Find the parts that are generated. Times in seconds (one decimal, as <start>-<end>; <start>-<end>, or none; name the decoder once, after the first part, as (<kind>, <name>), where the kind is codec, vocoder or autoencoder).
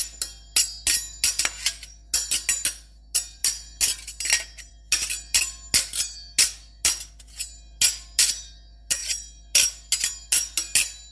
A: none